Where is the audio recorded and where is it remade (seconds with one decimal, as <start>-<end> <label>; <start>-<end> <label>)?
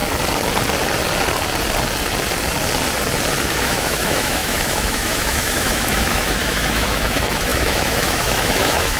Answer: 0.0-3.5 recorded; 3.5-9.0 remade